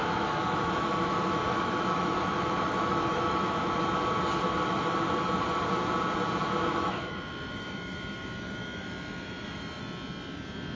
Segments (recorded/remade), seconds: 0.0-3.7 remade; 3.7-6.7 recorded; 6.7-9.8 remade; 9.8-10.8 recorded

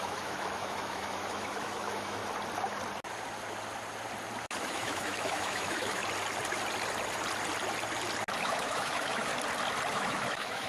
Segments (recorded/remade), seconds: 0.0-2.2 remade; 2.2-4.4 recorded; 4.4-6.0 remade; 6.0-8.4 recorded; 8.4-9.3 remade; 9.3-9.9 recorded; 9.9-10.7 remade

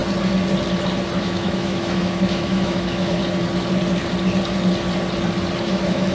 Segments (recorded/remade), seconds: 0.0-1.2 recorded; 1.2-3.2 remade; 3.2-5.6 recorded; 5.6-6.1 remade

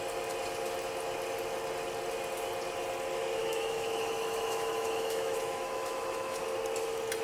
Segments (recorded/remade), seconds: 0.0-3.4 recorded; 3.4-6.4 remade; 6.4-7.2 recorded

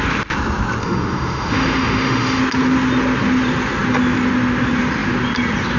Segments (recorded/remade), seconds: 0.0-0.8 recorded; 0.8-2.4 remade; 2.4-5.8 recorded

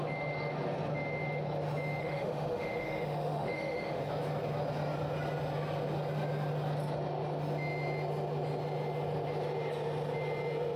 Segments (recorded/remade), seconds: 0.0-2.0 recorded; 2.0-4.0 remade; 4.0-10.8 recorded

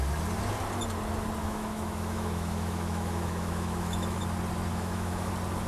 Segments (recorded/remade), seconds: 0.0-1.4 recorded; 1.4-4.2 remade; 4.2-4.7 recorded; 4.7-5.3 remade; 5.3-5.7 recorded